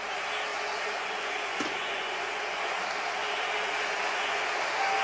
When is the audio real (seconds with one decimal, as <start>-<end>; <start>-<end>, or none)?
0.0-0.5; 2.8-3.2; 4.5-5.0